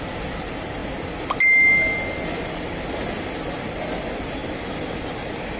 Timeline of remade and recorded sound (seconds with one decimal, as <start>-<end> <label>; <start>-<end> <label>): 0.0-5.6 recorded